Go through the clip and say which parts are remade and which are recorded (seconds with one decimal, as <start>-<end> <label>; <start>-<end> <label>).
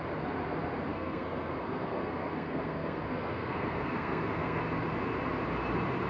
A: 0.0-0.9 recorded; 0.9-4.6 remade; 4.6-6.1 recorded